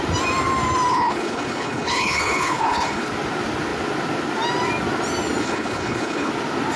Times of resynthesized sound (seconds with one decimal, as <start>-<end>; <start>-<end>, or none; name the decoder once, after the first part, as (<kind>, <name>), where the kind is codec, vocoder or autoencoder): 0.9-3.1 (codec, HILCodec); 5.4-6.3